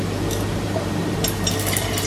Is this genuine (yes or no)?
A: no